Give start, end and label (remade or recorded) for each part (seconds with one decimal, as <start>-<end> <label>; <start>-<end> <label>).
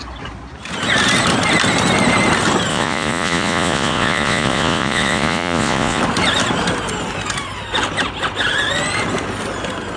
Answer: 0.0-2.7 recorded; 2.7-6.0 remade; 6.0-10.0 recorded